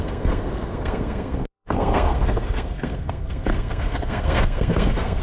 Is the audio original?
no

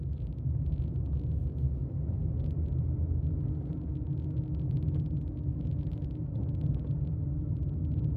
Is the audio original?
yes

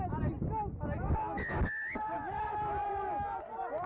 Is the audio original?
yes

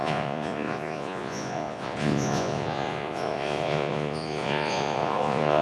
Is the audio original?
no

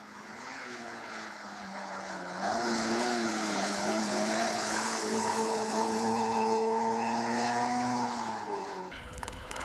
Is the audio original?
no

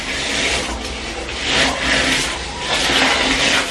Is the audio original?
no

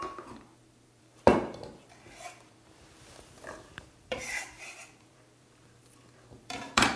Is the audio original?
no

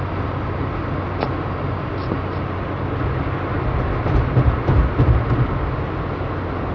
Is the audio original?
yes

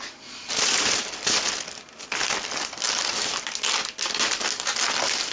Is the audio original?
yes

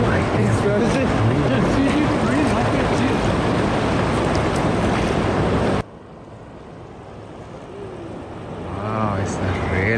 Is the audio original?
yes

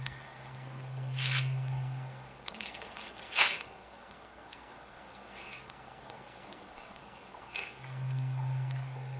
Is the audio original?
no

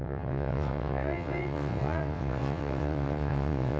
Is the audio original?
no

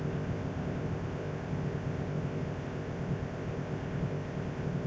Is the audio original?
no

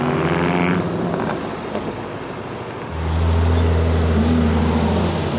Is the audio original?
yes